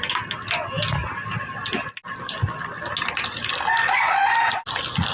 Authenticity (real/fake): real